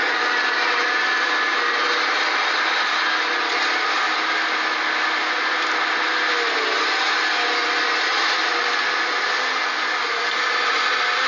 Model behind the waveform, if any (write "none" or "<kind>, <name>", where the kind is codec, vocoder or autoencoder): none